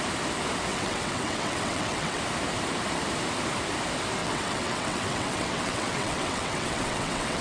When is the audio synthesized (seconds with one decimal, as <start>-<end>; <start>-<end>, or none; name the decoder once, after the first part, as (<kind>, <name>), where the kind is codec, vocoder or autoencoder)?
0.7-2.2 (vocoder, WaveNeXt); 4.2-7.4